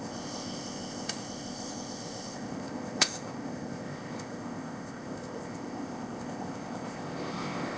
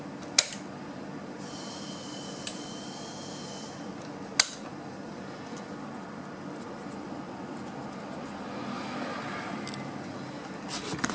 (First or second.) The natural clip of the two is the second